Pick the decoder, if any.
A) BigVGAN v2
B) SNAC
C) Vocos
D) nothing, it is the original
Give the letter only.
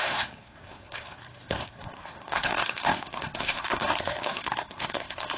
B